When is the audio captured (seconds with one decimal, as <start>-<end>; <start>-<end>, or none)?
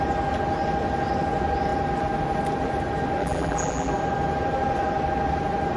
0.0-3.2; 3.9-5.8